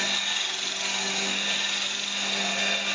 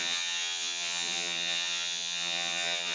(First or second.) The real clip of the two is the first